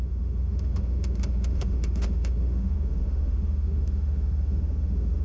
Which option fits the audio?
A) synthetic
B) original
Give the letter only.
A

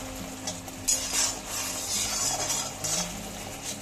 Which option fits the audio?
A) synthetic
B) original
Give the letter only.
B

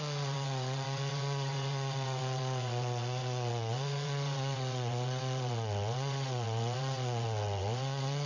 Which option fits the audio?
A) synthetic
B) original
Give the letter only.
A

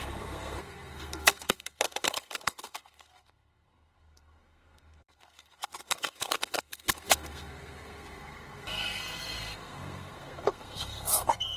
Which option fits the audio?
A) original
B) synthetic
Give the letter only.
B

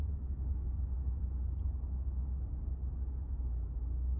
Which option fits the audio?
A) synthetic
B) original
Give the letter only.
B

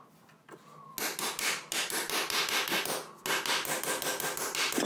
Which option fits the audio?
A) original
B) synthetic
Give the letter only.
A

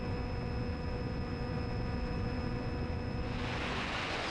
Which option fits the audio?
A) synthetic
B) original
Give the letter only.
A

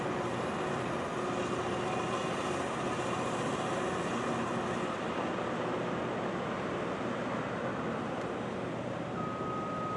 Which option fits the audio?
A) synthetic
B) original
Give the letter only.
B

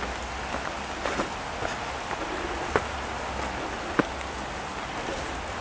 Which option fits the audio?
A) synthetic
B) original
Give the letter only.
B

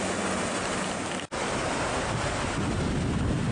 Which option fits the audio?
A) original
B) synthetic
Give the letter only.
A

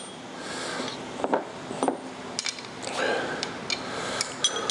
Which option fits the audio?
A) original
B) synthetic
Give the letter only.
A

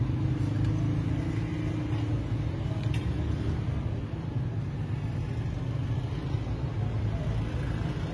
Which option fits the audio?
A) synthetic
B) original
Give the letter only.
B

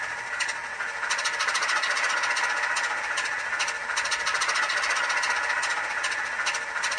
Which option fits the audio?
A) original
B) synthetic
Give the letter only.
A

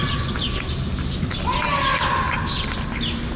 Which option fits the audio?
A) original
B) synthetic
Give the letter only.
A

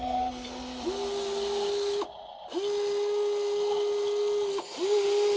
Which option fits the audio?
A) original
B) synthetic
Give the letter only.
A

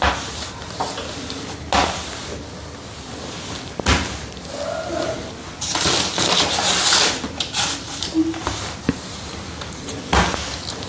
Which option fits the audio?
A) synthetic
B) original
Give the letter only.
B